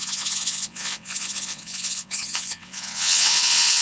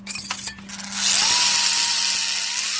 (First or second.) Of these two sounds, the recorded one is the second